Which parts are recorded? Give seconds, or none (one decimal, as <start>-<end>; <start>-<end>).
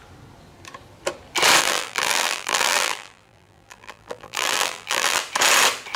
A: 0.0-1.6; 5.2-6.0